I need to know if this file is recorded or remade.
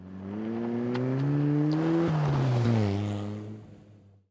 recorded